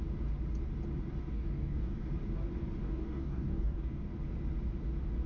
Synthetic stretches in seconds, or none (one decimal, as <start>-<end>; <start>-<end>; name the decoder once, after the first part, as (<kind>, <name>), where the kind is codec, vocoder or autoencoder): 1.2-2.1 (codec, DAC); 2.8-4.0